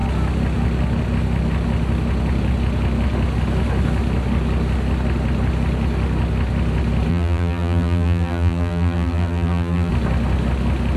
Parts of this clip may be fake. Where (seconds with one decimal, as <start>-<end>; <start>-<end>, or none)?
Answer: 7.1-9.9

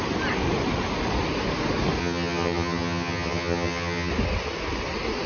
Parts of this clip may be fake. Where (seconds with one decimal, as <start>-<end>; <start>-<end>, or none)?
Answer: 2.0-4.1

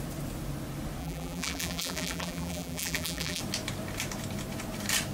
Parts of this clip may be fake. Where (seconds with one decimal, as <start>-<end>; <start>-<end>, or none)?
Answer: 1.0-3.4

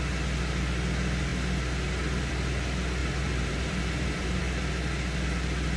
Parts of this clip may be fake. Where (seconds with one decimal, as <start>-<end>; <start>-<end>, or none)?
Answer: 3.0-4.4

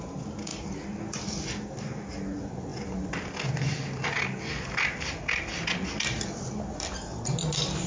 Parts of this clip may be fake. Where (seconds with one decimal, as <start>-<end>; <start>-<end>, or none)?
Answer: 0.5-1.0